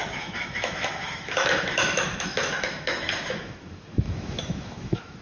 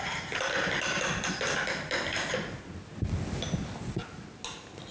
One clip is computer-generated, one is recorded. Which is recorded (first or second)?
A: second